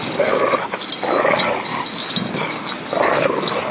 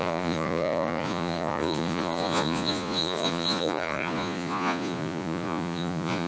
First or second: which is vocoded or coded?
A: second